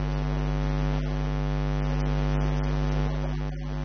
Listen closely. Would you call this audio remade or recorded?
recorded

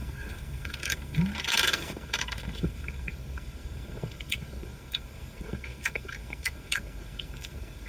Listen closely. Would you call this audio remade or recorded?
remade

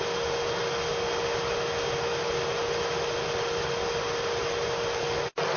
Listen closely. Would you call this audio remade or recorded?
recorded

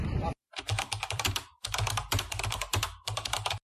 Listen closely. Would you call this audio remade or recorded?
remade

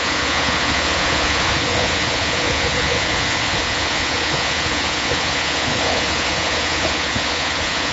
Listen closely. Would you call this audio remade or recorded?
remade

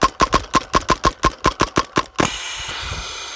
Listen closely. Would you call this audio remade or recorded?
recorded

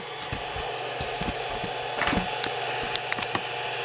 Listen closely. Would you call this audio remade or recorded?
recorded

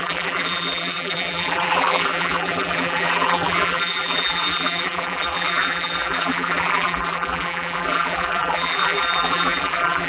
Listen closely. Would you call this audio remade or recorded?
remade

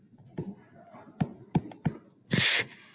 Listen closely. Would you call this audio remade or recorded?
recorded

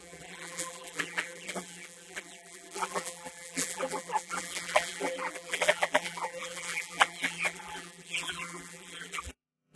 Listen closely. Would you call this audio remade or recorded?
remade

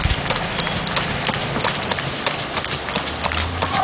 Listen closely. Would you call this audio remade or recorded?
recorded